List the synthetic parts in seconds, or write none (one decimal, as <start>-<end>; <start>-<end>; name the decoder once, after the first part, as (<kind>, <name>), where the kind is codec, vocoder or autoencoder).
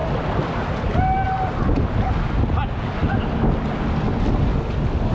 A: none